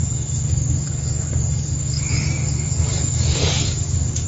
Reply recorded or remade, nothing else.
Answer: remade